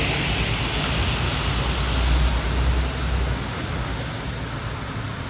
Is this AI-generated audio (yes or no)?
no